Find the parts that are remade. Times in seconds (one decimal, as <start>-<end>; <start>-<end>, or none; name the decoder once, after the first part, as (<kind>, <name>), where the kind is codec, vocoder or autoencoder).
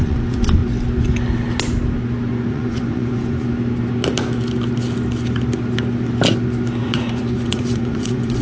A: 0.0-0.6 (vocoder, Vocos); 2.5-3.5; 6.8-8.4